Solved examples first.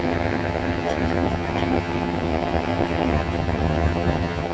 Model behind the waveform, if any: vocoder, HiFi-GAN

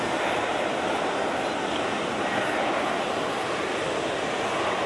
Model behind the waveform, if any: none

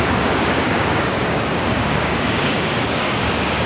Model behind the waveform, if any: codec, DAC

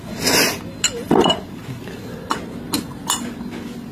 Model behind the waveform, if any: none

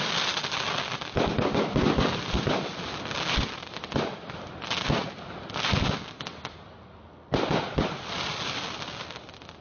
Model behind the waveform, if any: none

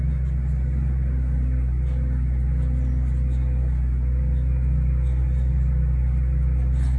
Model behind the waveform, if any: none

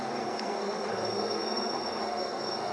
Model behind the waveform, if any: codec, SNAC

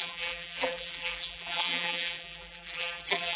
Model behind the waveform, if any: vocoder, BigVGAN v2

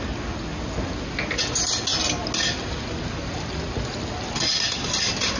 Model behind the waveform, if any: none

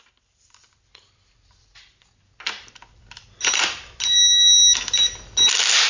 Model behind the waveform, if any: none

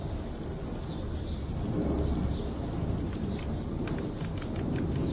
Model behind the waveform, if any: none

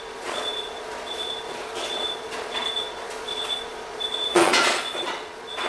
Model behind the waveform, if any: vocoder, Vocos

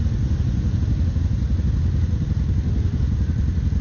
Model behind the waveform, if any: none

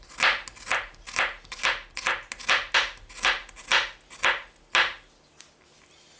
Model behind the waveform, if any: none